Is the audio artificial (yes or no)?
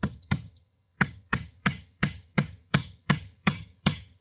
yes